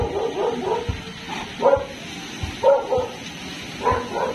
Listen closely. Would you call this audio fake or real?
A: real